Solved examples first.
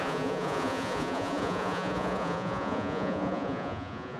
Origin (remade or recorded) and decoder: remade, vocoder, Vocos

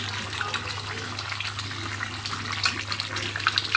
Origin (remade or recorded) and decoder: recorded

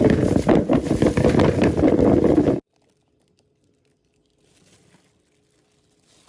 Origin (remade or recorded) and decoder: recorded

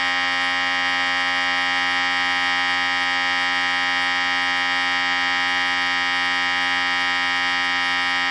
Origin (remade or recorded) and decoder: recorded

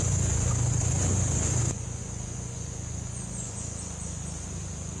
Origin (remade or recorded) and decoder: remade, vocoder, Vocos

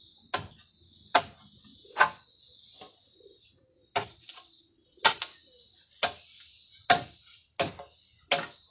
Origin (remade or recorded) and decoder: recorded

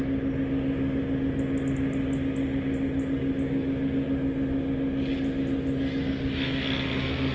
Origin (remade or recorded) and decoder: recorded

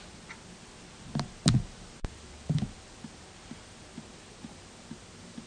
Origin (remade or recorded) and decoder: recorded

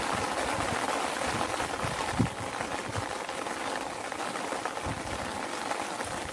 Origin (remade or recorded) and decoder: recorded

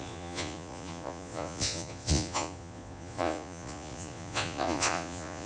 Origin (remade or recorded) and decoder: remade, vocoder, Vocos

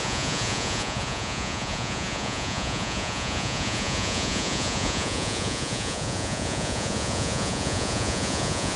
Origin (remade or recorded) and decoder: remade, vocoder, Vocos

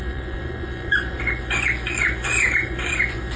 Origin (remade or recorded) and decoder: remade, vocoder, Vocos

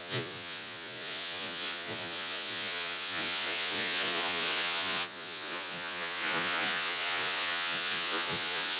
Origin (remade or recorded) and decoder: remade, vocoder, Vocos